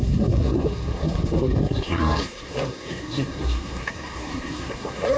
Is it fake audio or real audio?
fake